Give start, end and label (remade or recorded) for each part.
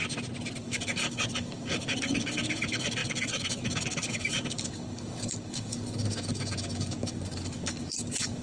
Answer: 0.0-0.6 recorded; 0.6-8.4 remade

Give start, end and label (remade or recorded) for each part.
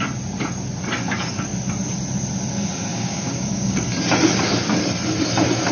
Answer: 0.0-2.9 recorded; 2.9-3.8 remade; 3.8-5.7 recorded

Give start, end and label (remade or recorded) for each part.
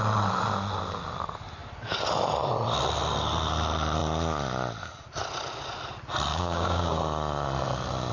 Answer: 0.0-6.3 recorded; 6.3-7.0 remade; 7.0-8.1 recorded